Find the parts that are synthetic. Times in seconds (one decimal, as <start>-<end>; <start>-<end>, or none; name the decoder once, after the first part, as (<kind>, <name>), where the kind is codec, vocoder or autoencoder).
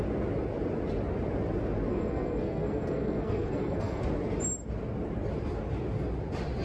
1.9-4.0 (codec, SNAC)